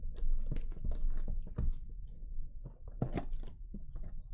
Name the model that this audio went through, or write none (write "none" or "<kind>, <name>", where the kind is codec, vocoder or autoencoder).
none